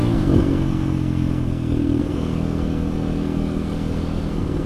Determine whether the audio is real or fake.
fake